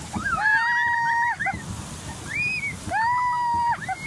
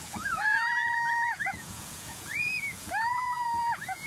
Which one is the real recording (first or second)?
first